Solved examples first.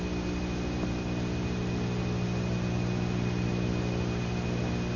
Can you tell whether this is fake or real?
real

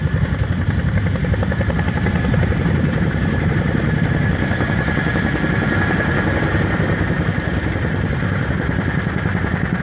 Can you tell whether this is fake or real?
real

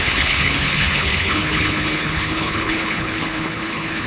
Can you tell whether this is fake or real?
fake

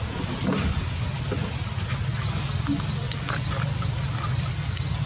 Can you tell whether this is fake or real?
real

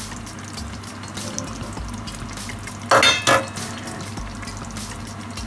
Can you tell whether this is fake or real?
real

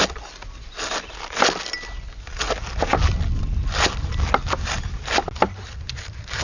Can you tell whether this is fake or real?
real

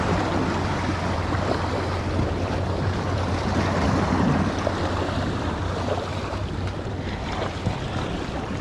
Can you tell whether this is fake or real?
fake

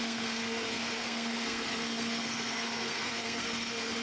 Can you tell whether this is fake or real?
fake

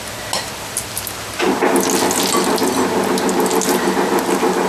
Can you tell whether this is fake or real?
real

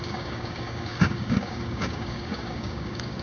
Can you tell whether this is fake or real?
fake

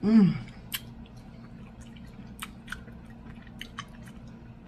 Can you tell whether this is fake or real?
real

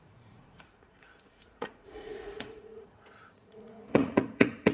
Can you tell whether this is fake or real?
fake